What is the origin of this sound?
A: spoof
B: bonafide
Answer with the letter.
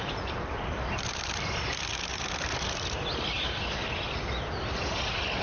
B